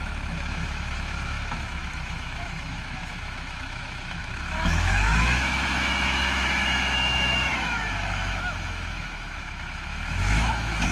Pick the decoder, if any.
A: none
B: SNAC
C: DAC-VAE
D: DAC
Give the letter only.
C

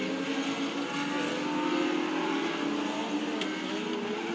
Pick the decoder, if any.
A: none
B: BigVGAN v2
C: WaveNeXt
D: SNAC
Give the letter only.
A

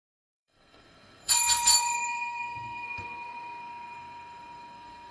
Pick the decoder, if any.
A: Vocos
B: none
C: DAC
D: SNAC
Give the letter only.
D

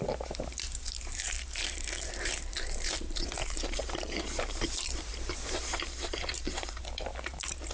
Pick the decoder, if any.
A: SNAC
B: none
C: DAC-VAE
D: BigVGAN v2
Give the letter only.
D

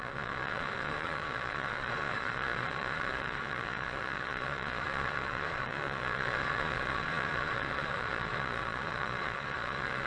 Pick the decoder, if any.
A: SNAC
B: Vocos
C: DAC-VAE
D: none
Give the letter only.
B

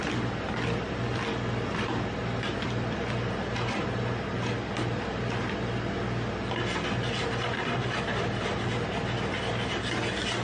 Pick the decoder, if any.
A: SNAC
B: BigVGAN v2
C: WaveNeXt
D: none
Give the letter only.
D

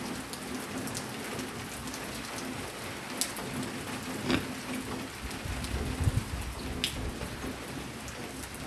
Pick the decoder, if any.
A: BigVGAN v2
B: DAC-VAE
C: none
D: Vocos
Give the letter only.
C